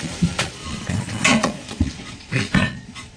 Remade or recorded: remade